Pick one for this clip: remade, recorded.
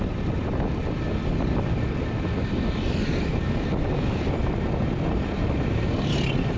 recorded